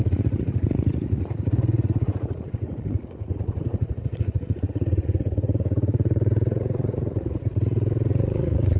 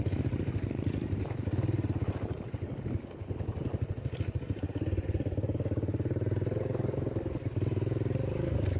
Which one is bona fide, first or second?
second